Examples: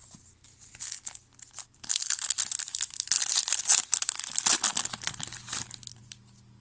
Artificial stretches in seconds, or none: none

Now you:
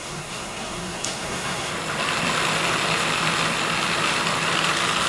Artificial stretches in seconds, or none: 0.0-1.7 (codec, SNAC)

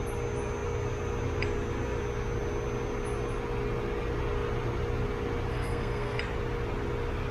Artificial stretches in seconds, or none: 5.5-6.2 (codec, SNAC)

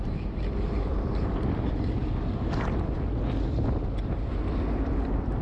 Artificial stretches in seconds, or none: none

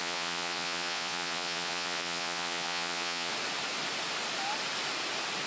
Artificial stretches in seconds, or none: 0.0-3.3 (vocoder, Vocos)

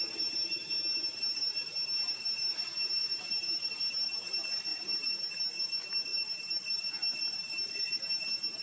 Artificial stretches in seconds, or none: 4.7-5.3 (vocoder, BigVGAN v2)